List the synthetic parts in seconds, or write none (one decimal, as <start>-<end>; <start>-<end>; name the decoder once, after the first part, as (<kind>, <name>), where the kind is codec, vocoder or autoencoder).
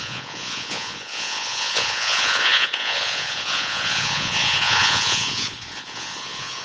0.0-6.6 (vocoder, Vocos)